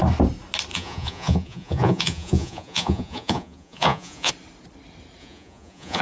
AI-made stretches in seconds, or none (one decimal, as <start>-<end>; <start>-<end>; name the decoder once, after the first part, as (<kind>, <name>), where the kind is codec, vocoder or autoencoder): 0.7-4.3 (vocoder, Vocos); 5.2-6.0